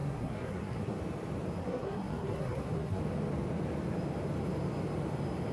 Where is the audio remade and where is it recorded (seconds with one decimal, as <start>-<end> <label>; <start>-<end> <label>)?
0.0-1.0 remade; 1.0-1.6 recorded; 1.6-3.0 remade; 3.0-5.5 recorded